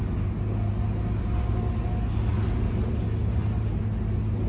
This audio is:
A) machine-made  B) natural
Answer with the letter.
B